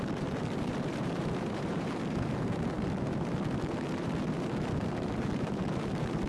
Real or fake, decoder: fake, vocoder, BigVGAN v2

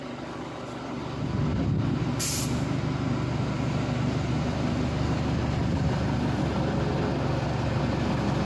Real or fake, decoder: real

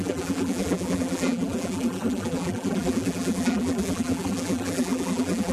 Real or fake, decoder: fake, vocoder, BigVGAN v2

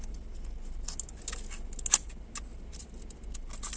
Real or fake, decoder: real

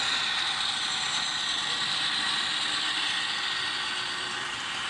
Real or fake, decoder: real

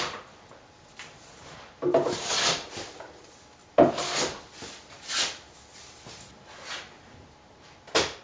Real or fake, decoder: real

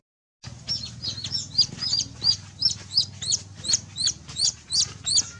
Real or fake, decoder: real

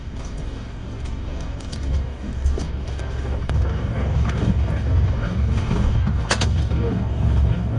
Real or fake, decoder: fake, codec, DAC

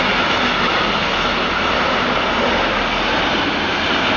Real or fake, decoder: real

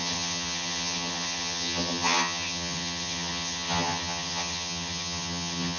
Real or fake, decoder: fake, vocoder, HiFi-GAN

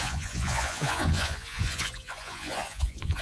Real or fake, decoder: fake, vocoder, Vocos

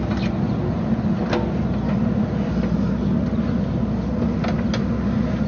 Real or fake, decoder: real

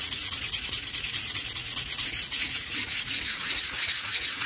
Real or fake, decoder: fake, vocoder, Vocos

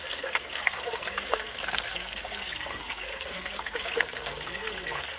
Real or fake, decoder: fake, codec, SNAC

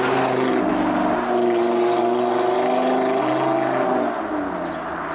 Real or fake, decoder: real